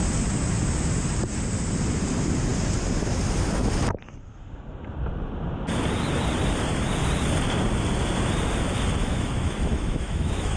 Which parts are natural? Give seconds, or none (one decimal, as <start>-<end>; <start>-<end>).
0.0-9.0